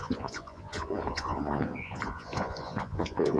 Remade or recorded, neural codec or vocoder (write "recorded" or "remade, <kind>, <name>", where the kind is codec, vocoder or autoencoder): remade, vocoder, Vocos